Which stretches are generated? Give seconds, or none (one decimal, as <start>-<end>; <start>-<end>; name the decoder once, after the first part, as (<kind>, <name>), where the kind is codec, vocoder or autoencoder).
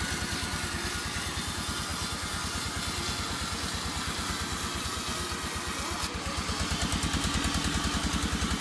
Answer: none